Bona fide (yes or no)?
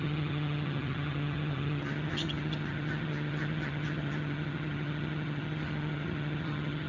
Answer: no